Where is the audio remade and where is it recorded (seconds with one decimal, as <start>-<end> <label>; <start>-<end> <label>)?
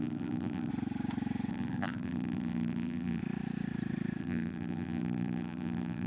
0.0-0.7 remade; 0.7-1.5 recorded; 1.5-3.2 remade; 3.2-4.2 recorded; 4.2-6.1 remade